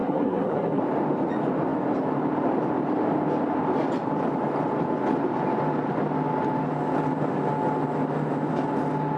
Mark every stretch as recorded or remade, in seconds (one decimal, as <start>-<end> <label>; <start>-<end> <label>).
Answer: 0.0-0.8 remade; 0.8-9.2 recorded